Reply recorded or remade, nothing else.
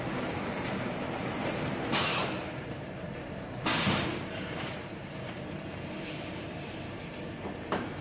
remade